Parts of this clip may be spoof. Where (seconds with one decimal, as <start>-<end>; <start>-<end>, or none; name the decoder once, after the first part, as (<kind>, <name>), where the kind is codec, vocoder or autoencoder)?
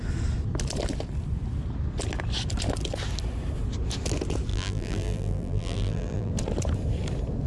4.5-6.3 (vocoder, BigVGAN v2)